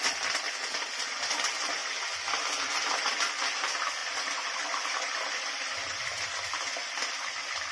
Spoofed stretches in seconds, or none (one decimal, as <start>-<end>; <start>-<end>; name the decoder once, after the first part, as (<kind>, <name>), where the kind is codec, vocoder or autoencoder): 4.0-7.1 (vocoder, BigVGAN v2)